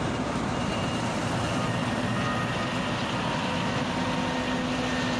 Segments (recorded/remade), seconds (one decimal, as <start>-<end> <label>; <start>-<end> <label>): 0.0-1.8 remade; 1.8-5.2 recorded